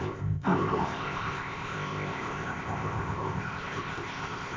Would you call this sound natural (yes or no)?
no